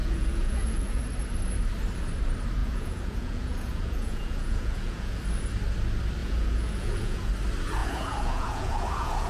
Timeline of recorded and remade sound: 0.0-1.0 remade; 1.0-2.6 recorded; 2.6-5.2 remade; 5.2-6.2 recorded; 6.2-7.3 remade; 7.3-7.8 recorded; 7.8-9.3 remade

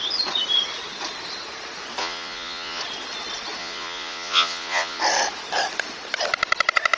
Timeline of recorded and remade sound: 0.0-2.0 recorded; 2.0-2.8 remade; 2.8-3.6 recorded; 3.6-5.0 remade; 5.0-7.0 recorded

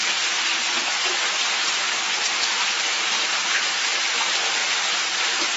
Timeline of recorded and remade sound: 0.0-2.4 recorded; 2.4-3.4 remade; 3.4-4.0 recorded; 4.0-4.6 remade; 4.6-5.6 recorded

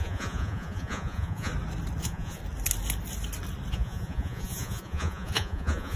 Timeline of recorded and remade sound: 0.0-1.5 remade; 1.5-2.0 recorded; 2.0-2.4 remade; 2.4-3.7 recorded; 3.7-6.0 remade

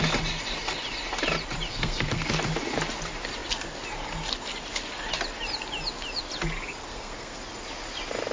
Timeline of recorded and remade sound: 0.0-1.7 recorded; 1.7-2.3 remade; 2.3-6.9 recorded; 6.9-7.4 remade; 7.4-8.3 recorded